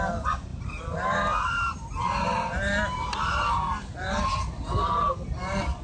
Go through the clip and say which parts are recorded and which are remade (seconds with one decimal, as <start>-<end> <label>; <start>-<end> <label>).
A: 0.0-5.8 recorded